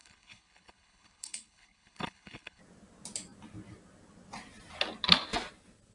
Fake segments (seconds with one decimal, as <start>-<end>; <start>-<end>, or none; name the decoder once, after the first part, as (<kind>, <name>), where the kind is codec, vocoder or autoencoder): 0.0-2.6 (codec, HILCodec)